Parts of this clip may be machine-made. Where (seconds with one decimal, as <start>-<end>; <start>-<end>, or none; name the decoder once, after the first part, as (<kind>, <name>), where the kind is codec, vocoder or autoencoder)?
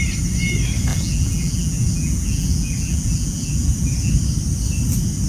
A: 0.9-4.1 (vocoder, BigVGAN v2)